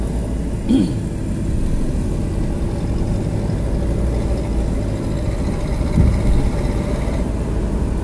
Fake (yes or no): no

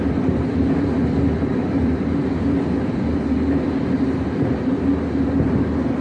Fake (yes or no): yes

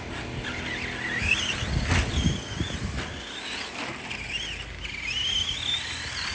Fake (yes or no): no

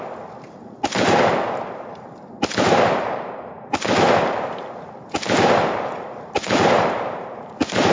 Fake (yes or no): no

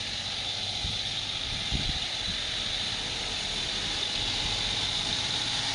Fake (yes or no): no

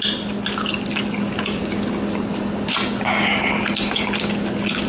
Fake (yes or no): no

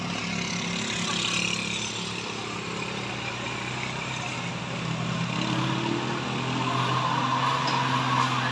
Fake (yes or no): no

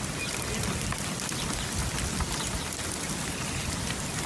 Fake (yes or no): no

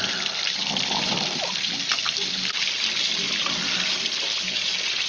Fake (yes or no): no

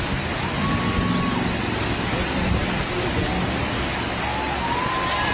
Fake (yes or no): no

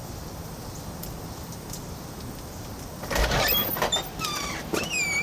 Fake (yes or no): yes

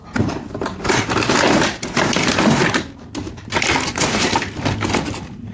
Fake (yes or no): yes